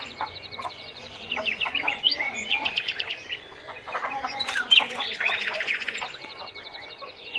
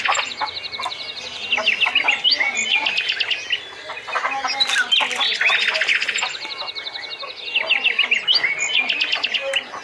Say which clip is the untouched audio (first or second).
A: second